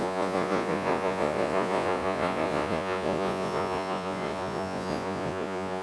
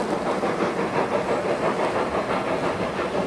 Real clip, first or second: second